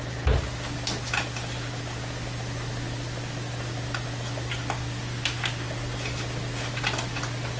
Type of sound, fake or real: real